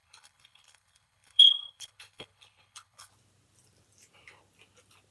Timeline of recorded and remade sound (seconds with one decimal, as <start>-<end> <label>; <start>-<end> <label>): 0.0-3.1 remade; 3.1-5.1 recorded